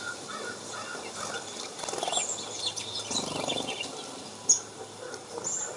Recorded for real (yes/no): yes